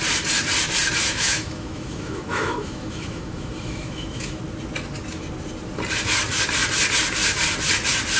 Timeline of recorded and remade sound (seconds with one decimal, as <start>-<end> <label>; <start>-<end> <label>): 0.0-1.0 recorded; 1.0-4.4 remade; 4.4-8.2 recorded